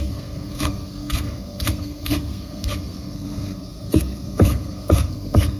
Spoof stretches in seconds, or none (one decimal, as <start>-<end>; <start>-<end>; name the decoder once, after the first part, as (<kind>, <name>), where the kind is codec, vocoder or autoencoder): 0.0-5.6 (codec, SNAC)